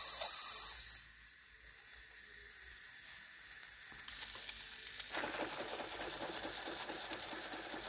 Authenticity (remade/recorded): recorded